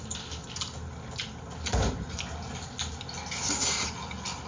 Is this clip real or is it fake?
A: real